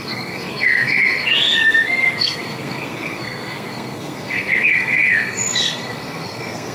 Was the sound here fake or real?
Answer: fake